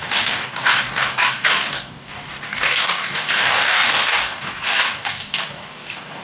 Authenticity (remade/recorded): remade